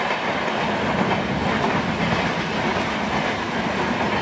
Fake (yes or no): no